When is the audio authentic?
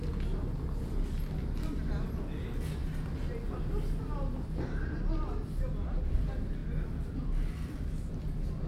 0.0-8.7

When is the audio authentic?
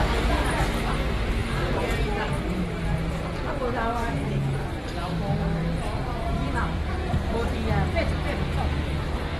0.0-5.6; 7.3-7.9